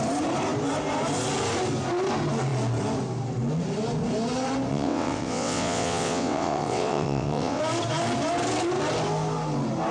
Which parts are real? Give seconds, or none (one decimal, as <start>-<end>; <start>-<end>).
0.0-4.7; 7.6-9.9